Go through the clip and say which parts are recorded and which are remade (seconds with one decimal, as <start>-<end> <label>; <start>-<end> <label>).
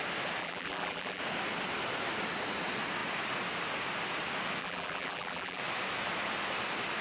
0.0-0.4 recorded; 0.4-1.2 remade; 1.2-4.6 recorded; 4.6-5.6 remade; 5.6-7.0 recorded